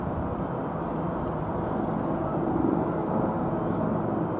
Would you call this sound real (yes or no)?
yes